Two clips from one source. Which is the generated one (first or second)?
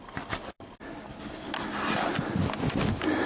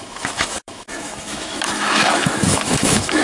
second